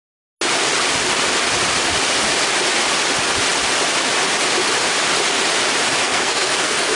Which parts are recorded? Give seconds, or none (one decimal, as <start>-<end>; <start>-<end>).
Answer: 0.0-6.0